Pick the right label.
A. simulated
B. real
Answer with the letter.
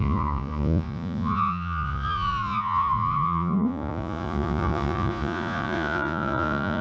A